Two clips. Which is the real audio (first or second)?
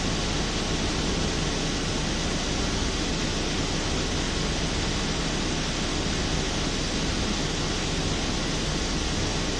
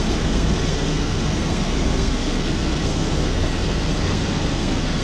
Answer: first